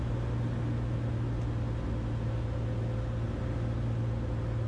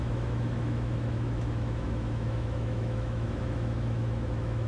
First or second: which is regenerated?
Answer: second